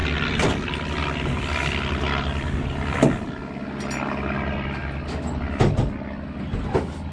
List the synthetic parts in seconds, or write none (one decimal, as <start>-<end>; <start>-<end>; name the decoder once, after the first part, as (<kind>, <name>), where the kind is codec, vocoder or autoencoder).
0.0-3.3 (vocoder, BigVGAN v2)